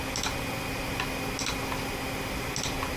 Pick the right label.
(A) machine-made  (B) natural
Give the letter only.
B